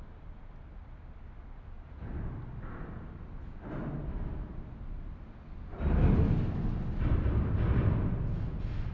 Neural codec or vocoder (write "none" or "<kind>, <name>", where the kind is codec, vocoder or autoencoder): none